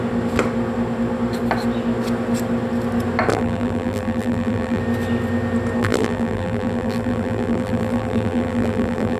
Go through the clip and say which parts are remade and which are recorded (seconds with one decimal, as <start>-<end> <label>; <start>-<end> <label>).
0.0-3.3 recorded; 3.3-4.8 remade; 4.8-5.8 recorded; 5.8-9.2 remade